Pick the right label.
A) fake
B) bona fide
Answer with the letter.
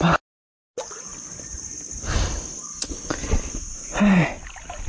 B